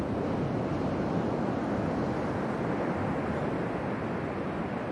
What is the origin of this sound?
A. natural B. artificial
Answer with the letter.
A